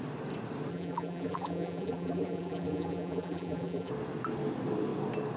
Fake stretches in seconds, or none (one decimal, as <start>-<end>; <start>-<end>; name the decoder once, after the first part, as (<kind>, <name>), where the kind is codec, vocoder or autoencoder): 0.7-3.9 (vocoder, BigVGAN v2)